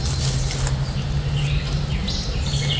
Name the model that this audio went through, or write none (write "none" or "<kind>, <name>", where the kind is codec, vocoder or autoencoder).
none